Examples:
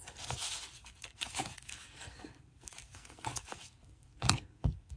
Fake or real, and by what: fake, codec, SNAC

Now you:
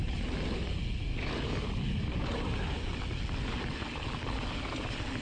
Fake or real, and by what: real